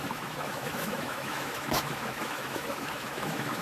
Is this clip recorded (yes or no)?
no